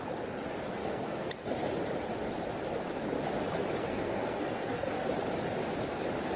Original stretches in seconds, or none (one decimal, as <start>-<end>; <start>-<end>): 0.0-0.7; 1.3-3.8; 5.1-6.4